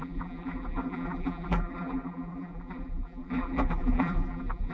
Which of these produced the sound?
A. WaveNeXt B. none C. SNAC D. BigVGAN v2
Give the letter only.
D